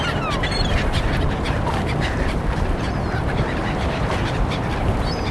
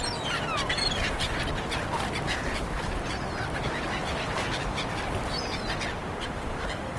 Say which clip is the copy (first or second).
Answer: first